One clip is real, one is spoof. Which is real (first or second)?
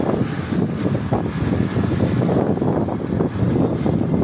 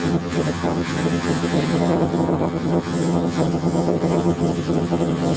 first